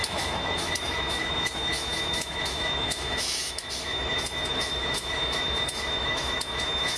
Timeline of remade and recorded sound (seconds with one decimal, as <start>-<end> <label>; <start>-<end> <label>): 0.0-7.0 remade